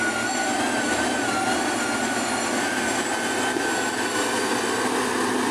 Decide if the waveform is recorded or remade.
recorded